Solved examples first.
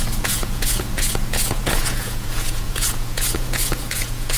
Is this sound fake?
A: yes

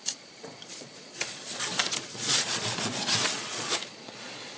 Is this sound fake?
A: yes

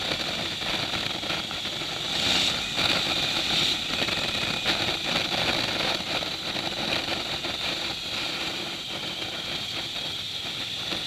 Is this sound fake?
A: no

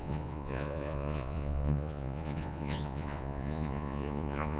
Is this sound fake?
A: yes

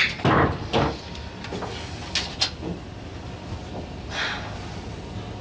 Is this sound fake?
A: no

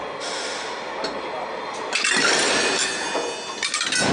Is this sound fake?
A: no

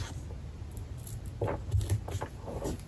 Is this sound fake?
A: no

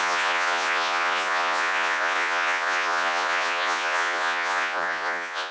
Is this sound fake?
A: yes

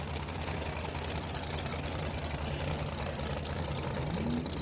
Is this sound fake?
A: no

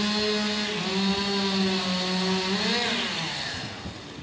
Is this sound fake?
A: no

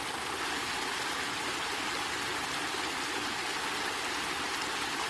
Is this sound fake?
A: no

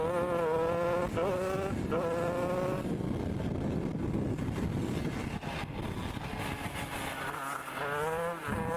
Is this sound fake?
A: no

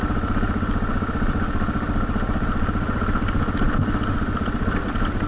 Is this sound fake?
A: no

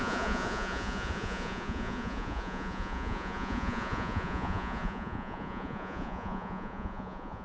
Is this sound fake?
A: yes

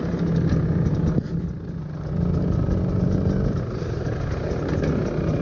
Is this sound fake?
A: no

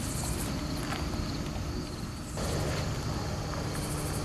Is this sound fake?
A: no